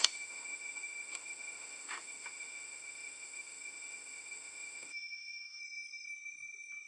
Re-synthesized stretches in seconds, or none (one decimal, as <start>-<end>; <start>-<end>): 0.0-5.6